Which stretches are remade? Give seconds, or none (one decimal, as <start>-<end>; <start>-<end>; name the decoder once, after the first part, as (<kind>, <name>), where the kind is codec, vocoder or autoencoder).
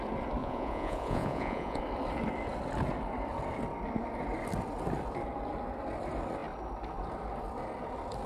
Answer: 0.4-1.8 (vocoder, Vocos)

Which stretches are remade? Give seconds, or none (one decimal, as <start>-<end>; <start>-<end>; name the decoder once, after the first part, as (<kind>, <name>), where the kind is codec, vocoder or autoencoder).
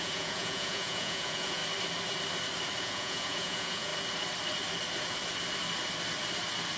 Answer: 0.0-1.6 (vocoder, Vocos); 2.8-3.9